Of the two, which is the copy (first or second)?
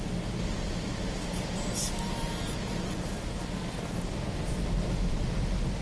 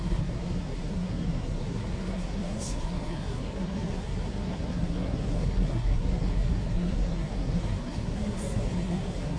second